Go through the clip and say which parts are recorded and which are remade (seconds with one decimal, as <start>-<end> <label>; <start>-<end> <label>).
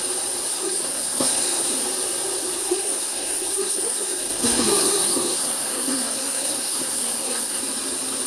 0.0-0.5 recorded; 0.5-1.8 remade; 1.8-2.6 recorded; 2.6-7.6 remade; 7.6-8.3 recorded